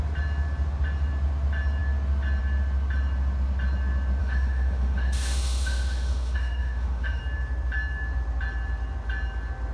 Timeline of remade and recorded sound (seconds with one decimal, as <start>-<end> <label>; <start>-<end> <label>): 0.0-4.2 recorded; 4.2-7.2 remade; 7.2-9.7 recorded